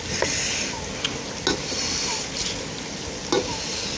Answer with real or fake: real